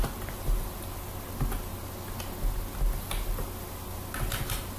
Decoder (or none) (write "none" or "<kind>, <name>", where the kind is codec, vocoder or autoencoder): none